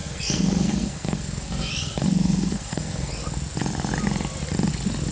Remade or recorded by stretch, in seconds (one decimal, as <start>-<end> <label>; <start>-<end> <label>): 0.0-3.1 remade; 3.1-5.1 recorded